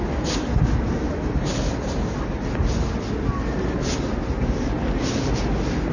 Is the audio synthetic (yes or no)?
no